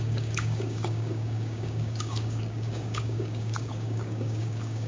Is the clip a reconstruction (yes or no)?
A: yes